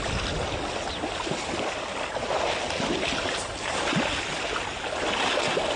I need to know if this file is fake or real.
real